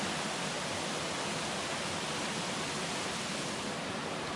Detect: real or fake real